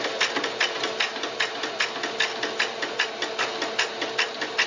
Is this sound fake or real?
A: real